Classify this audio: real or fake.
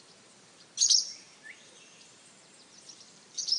fake